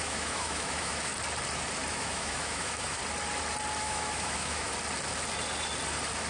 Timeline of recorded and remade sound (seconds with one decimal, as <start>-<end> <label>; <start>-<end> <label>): 0.0-1.1 remade; 1.1-1.9 recorded; 1.9-3.0 remade; 3.0-3.8 recorded; 3.8-4.7 remade; 4.7-6.3 recorded

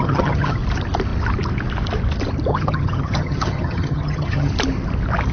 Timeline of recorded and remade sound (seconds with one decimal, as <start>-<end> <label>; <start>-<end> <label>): 0.0-0.6 remade; 0.6-2.5 recorded; 2.5-4.5 remade; 4.5-5.3 recorded

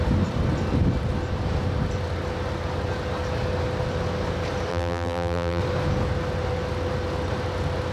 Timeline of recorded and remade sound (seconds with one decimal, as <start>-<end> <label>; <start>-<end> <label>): 0.0-4.7 recorded; 4.7-5.6 remade; 5.6-7.9 recorded